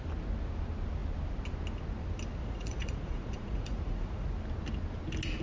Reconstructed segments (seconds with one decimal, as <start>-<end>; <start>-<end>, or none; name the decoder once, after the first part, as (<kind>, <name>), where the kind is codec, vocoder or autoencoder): 2.4-4.3 (vocoder, Vocos)